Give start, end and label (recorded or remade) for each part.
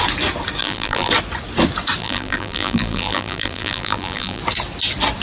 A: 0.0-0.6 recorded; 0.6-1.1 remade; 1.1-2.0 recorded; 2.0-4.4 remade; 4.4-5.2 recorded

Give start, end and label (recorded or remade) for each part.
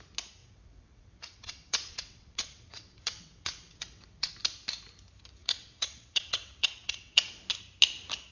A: 0.0-0.4 recorded; 0.4-4.3 remade; 4.3-5.4 recorded; 5.4-7.4 remade; 7.4-8.3 recorded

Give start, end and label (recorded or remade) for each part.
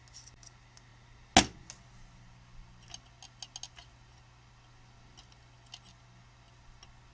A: 0.0-7.1 recorded